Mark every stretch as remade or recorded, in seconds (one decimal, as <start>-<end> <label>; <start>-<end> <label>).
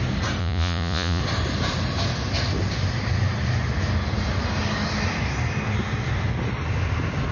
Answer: 0.0-0.4 recorded; 0.4-1.2 remade; 1.2-7.3 recorded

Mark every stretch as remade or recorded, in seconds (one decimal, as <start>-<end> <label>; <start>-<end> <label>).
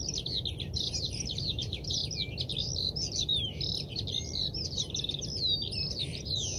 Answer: 0.0-0.6 recorded; 0.6-2.0 remade; 2.0-6.0 recorded; 6.0-6.6 remade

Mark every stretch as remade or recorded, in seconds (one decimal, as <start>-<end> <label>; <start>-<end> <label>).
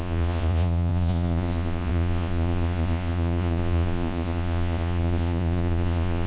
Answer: 0.0-6.3 remade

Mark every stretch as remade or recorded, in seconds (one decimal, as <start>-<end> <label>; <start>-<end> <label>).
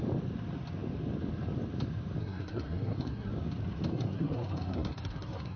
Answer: 0.0-2.2 recorded; 2.2-3.3 remade; 3.3-3.9 recorded; 3.9-5.6 remade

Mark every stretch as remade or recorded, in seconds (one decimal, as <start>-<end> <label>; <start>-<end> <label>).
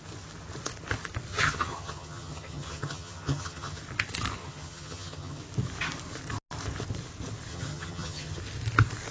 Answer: 0.0-1.3 recorded; 1.3-3.8 remade; 3.8-4.4 recorded; 4.4-5.4 remade; 5.4-7.5 recorded; 7.5-8.4 remade; 8.4-9.1 recorded